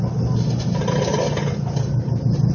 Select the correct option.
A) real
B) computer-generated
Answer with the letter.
A